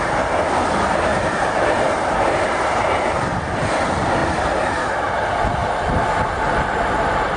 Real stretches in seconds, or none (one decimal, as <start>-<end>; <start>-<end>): 0.0-1.1; 2.5-7.4